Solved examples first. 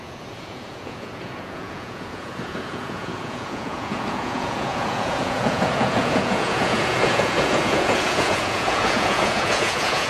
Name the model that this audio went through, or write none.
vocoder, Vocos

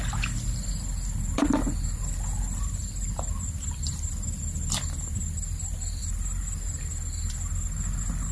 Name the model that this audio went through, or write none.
none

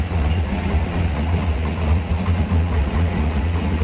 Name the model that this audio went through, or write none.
vocoder, Vocos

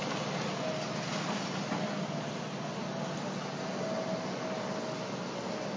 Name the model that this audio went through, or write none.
none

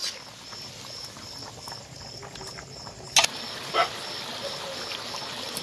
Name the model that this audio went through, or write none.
none